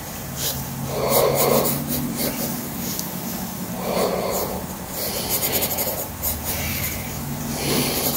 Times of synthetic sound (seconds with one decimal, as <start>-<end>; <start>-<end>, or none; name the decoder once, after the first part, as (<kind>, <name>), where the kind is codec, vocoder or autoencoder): 2.5-3.7 (codec, DAC); 6.7-7.4